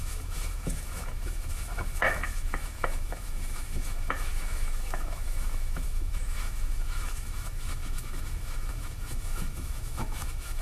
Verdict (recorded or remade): remade